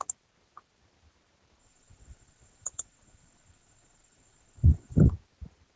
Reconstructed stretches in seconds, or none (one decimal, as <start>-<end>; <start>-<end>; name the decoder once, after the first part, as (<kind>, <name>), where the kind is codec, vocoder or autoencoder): 1.6-5.1 (vocoder, WaveNeXt)